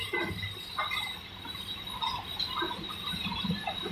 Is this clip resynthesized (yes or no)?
no